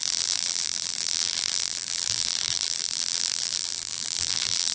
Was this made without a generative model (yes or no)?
no